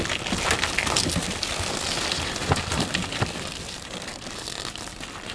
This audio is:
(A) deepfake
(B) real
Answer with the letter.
B